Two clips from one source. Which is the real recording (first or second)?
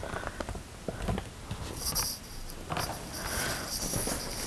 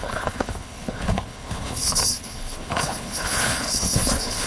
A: first